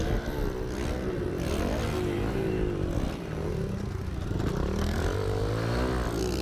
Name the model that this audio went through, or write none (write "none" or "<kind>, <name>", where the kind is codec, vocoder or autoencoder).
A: none